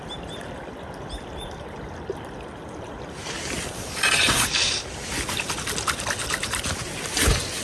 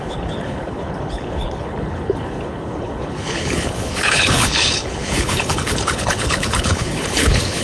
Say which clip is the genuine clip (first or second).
first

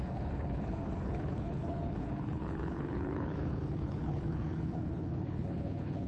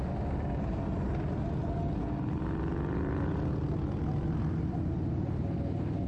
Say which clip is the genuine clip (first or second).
second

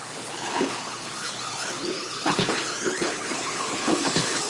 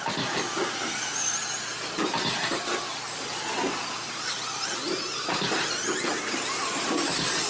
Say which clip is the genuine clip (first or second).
second